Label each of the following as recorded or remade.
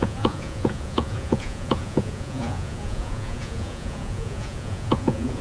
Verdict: remade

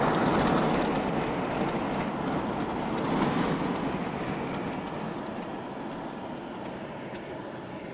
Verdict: recorded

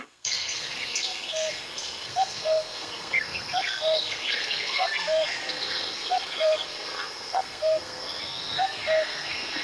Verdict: remade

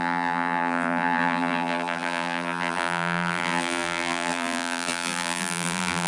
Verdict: remade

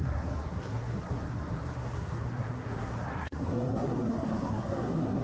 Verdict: remade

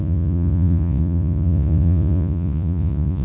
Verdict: remade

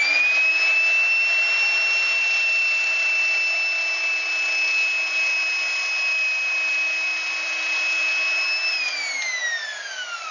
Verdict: recorded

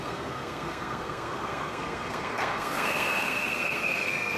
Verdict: remade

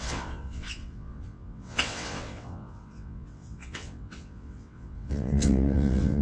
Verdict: remade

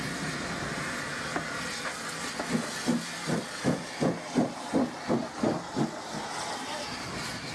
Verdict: recorded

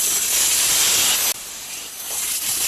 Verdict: recorded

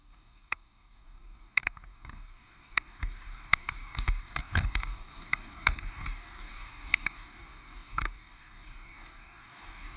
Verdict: remade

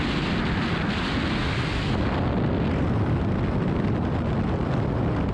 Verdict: recorded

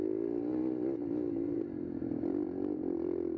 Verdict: recorded